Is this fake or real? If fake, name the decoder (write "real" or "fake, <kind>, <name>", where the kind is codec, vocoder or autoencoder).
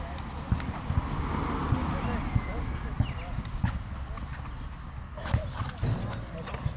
real